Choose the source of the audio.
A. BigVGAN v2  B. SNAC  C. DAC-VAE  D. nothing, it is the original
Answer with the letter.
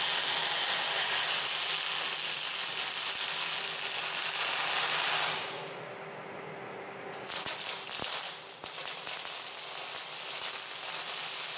D